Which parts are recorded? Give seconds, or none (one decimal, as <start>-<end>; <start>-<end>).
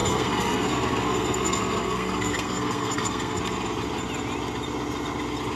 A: 3.4-5.6